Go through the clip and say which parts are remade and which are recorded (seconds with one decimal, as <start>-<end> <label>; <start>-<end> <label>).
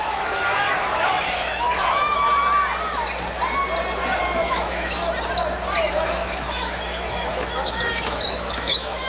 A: 0.0-2.3 remade; 2.3-4.2 recorded; 4.2-5.0 remade; 5.0-5.9 recorded; 5.9-9.1 remade